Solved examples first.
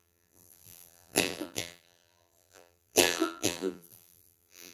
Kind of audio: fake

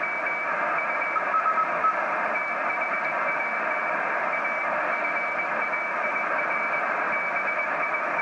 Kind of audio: real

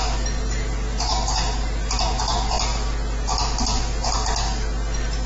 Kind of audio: real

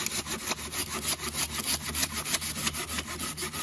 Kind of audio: real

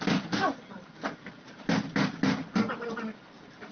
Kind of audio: fake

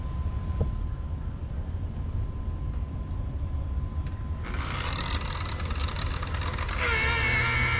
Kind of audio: real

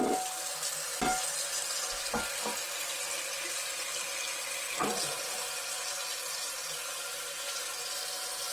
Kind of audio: real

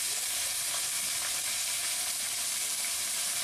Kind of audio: real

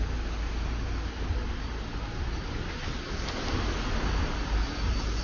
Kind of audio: real